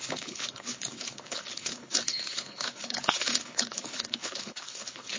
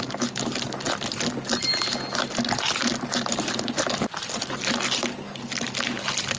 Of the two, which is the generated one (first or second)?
first